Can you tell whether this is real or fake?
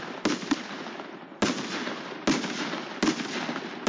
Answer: real